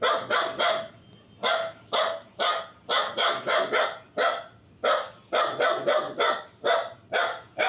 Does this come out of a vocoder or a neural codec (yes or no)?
no